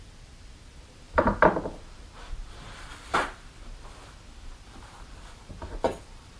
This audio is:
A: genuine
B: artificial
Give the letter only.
B